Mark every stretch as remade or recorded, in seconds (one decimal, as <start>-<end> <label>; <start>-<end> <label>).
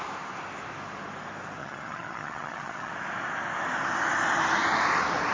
0.0-1.6 recorded; 1.6-2.9 remade; 2.9-5.3 recorded